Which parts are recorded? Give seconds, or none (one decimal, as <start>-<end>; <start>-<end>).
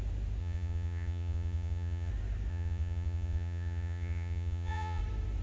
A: 0.0-0.4; 2.1-2.5; 5.0-5.4